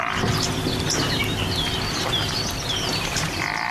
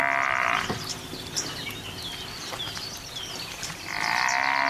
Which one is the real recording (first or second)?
first